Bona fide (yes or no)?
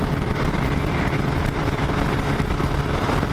yes